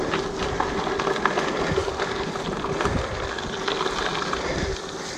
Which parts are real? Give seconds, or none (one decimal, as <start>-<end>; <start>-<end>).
0.0-5.2